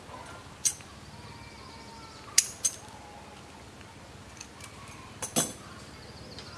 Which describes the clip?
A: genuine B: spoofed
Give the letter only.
A